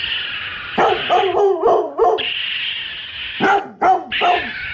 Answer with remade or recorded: recorded